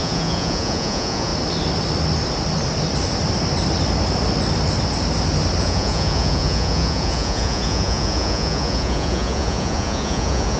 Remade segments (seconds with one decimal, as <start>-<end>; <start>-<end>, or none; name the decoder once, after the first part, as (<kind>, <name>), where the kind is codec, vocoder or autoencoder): 0.0-1.3 (vocoder, Vocos); 5.6-10.6